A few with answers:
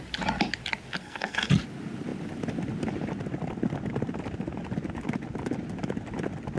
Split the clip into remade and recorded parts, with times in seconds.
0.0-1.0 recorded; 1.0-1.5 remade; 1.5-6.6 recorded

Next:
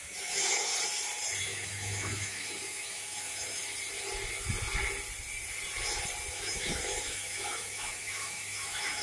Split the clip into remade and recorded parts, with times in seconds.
0.0-0.7 remade; 0.7-1.4 recorded; 1.4-3.6 remade; 3.6-6.3 recorded; 6.3-9.0 remade